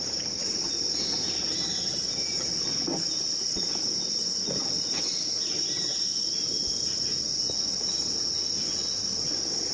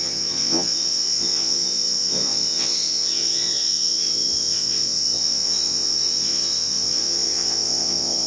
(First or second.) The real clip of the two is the first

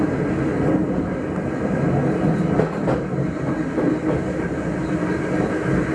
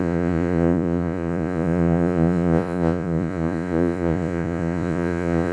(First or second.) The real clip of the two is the first